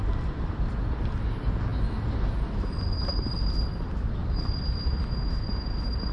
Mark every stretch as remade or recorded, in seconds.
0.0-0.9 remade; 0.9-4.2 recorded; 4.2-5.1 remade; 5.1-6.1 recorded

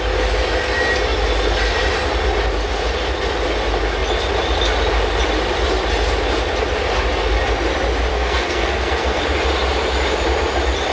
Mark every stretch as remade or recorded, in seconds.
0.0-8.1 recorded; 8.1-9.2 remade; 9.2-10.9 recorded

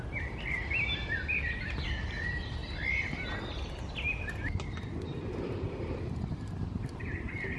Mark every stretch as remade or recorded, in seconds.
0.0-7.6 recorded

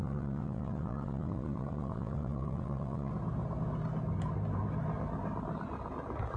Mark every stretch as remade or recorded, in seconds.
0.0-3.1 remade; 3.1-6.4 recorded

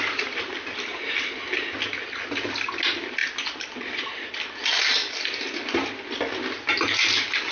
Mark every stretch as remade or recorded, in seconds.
0.0-7.5 recorded

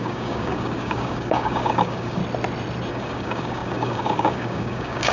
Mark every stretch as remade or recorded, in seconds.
0.0-2.2 remade; 2.2-2.9 recorded; 2.9-5.1 remade

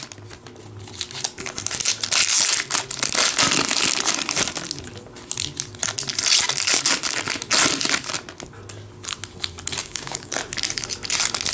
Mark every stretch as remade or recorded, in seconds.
0.0-9.8 recorded; 9.8-10.3 remade; 10.3-11.5 recorded

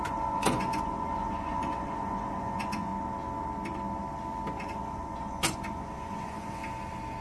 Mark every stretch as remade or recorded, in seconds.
0.0-2.9 remade; 2.9-4.6 recorded; 4.6-6.6 remade; 6.6-7.2 recorded